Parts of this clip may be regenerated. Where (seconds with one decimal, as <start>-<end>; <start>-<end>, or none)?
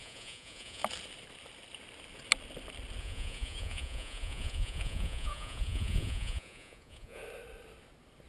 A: 0.0-0.8; 3.0-7.2